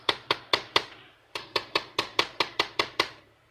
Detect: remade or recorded remade